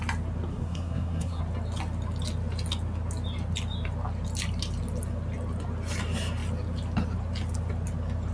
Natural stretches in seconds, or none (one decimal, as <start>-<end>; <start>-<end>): 0.0-0.5; 1.4-8.3